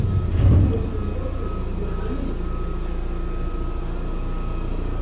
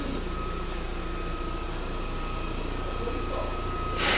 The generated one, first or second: second